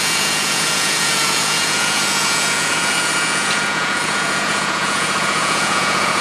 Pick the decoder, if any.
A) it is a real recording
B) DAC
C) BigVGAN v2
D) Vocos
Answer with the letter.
D